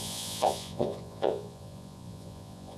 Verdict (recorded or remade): remade